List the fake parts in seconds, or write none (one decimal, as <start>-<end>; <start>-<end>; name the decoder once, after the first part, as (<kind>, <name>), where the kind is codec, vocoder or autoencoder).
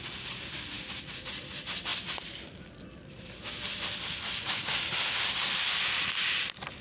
none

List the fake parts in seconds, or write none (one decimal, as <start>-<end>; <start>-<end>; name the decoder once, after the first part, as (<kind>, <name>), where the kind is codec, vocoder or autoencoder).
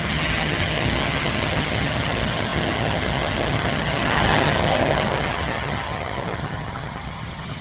0.0-7.6 (vocoder, HiFi-GAN)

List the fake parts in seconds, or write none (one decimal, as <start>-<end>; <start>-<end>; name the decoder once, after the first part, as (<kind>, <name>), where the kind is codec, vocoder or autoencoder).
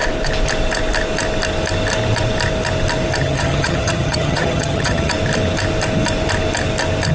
3.2-5.1 (vocoder, HiFi-GAN)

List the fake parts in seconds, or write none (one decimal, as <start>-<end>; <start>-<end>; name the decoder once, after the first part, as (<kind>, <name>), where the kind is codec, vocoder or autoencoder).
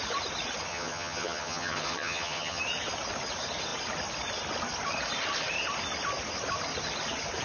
0.7-2.6 (vocoder, HiFi-GAN)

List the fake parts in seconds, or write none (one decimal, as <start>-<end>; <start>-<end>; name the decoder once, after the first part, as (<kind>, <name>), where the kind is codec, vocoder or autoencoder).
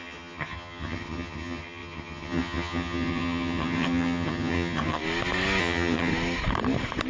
0.0-5.0 (vocoder, HiFi-GAN); 5.6-6.1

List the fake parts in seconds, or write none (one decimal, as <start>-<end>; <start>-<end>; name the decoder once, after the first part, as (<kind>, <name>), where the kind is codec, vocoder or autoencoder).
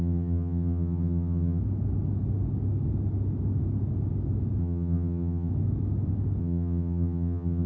0.0-1.6 (vocoder, HiFi-GAN); 4.6-5.5; 6.4-7.7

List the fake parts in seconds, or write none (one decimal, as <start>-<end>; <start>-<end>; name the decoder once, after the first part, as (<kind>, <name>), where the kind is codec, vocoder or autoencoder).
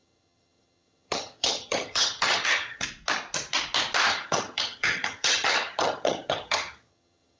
0.0-2.8 (vocoder, HiFi-GAN); 4.1-7.4